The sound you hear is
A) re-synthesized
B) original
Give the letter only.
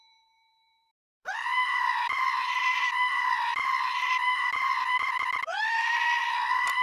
A